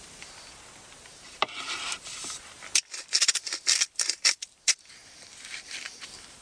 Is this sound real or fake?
fake